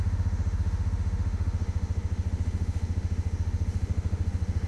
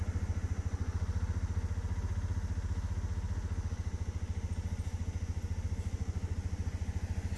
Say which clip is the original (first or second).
second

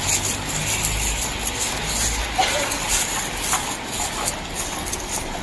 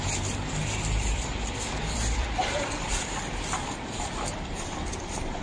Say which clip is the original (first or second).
first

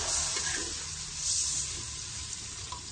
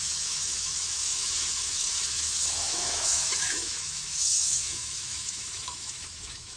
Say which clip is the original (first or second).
first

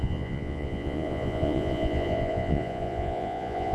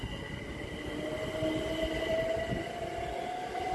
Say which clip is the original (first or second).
second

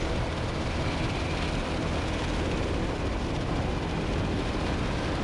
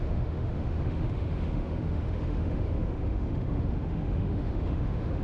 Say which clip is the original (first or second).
first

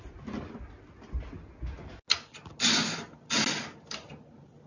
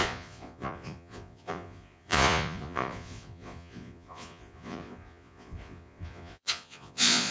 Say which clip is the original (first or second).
first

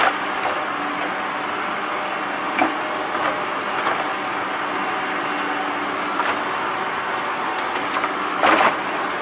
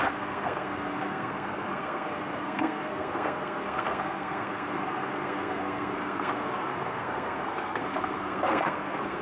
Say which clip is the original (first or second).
first